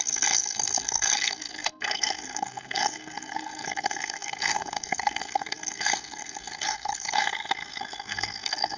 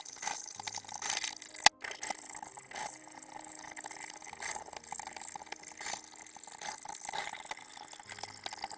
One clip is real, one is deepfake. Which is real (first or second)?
second